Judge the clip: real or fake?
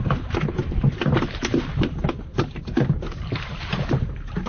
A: fake